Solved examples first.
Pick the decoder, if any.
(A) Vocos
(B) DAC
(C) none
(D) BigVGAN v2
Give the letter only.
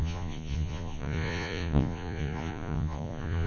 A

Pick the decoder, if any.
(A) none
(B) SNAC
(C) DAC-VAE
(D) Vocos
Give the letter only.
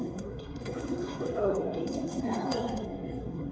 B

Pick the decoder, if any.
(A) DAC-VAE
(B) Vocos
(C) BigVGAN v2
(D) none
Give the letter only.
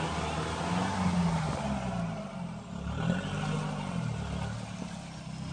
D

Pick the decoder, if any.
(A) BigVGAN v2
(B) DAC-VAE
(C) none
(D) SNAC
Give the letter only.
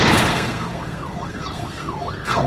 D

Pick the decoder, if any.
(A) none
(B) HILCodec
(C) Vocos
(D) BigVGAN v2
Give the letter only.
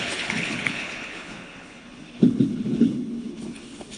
B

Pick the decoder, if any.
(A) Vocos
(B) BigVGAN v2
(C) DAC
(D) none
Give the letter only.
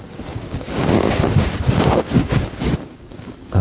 C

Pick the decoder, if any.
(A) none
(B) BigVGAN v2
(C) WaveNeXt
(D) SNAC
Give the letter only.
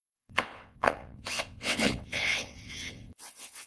C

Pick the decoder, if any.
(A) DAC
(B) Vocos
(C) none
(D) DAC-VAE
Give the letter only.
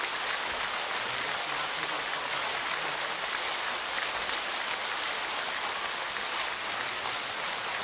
C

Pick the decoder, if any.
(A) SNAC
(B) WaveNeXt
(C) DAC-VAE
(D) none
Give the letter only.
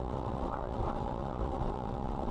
B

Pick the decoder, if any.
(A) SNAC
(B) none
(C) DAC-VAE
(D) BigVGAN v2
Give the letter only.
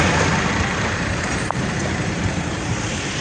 D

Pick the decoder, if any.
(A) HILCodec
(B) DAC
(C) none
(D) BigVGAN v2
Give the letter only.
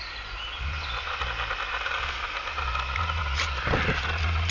C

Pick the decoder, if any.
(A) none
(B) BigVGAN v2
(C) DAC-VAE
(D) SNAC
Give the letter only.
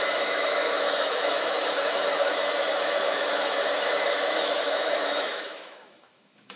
C